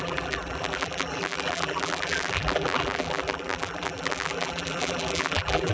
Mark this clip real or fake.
fake